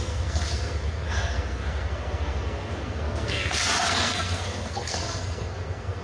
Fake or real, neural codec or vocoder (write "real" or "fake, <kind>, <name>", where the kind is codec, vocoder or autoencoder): fake, codec, SNAC